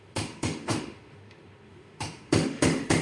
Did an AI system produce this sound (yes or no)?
yes